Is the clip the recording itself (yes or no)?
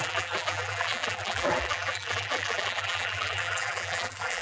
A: no